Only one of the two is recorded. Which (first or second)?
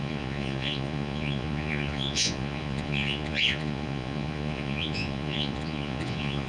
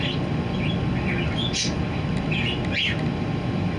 second